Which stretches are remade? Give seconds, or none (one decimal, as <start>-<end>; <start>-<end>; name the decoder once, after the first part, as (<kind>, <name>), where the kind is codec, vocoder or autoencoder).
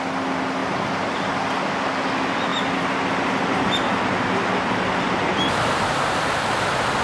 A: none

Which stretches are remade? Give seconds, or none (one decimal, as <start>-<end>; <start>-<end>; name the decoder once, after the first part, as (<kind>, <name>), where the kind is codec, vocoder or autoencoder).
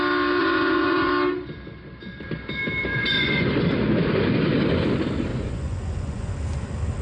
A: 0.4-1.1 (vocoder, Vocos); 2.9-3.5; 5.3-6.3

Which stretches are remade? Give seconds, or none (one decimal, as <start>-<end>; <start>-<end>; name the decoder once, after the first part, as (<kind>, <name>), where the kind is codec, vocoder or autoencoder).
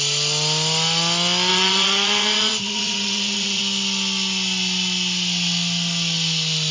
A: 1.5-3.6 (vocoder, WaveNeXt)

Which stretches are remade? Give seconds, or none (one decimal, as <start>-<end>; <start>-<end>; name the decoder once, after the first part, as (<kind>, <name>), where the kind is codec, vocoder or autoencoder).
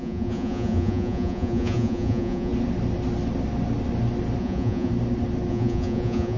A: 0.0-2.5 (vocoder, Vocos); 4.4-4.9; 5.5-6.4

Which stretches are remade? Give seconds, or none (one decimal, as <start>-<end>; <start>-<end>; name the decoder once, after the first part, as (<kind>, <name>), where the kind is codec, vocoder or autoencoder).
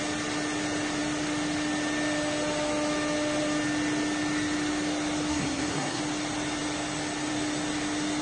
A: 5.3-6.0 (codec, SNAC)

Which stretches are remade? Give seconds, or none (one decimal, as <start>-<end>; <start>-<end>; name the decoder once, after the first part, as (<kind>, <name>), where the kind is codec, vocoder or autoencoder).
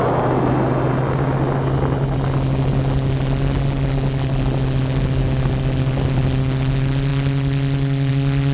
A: none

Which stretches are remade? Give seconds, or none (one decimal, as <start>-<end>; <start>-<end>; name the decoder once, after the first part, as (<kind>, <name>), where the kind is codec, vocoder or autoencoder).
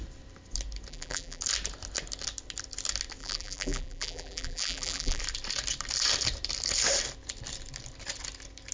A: 0.9-1.4 (vocoder, BigVGAN v2); 3.2-5.2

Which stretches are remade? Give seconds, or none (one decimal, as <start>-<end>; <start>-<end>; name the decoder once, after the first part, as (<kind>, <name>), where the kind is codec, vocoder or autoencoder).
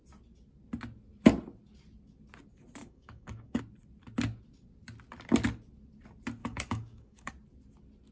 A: 2.8-3.6 (codec, DAC); 6.4-7.3